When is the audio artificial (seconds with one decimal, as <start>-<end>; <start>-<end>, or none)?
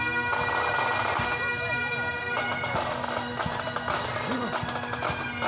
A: 2.4-5.5